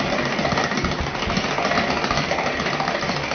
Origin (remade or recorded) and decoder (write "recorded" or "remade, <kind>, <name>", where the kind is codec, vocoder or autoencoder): recorded